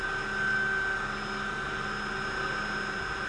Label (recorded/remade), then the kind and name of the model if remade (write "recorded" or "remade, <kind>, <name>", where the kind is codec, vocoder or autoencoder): recorded